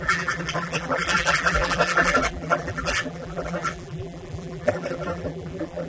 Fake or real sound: fake